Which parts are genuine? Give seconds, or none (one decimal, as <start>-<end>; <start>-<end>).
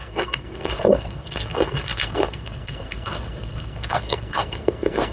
none